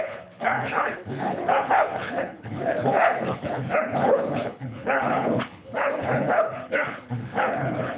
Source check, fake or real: fake